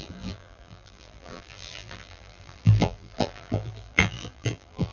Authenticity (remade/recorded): remade